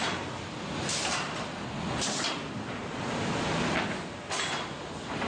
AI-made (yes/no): no